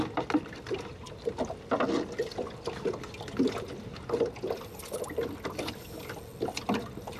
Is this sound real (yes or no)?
yes